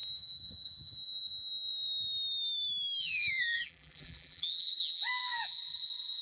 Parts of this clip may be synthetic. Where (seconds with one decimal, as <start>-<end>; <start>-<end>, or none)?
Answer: 3.0-6.2